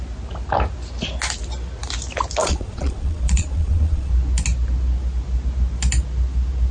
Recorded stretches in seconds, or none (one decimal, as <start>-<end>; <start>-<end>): 0.0-2.4; 4.1-6.7